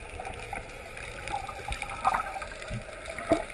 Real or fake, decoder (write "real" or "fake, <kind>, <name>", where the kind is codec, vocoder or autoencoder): real